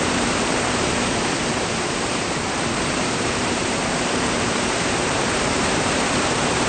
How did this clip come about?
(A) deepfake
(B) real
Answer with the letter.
A